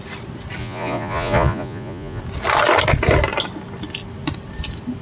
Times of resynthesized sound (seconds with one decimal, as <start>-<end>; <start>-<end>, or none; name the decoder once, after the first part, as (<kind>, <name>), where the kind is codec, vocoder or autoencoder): 0.6-2.2 (vocoder, Vocos)